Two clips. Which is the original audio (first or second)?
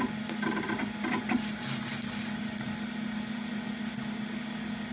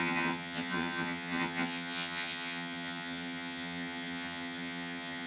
first